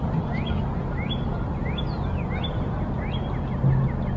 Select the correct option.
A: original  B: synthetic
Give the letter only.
A